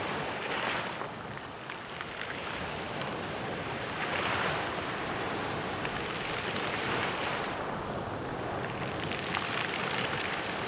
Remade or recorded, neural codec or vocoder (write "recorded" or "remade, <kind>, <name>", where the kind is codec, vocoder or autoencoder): recorded